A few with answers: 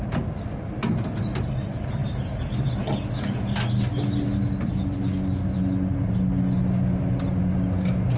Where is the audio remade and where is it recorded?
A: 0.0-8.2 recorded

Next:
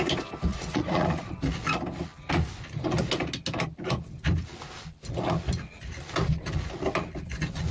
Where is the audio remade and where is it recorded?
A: 0.0-0.5 recorded; 0.5-1.3 remade; 1.3-7.7 recorded